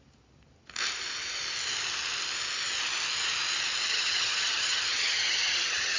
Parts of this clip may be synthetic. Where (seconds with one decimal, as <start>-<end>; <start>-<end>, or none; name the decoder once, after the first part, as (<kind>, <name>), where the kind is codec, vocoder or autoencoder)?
3.9-6.0 (vocoder, HiFi-GAN)